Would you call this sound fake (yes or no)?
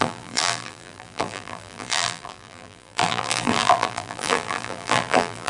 yes